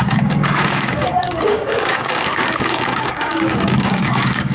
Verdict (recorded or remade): remade